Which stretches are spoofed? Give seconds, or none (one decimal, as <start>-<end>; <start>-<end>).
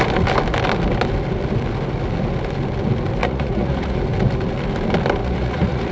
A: 3.2-4.0; 5.2-5.9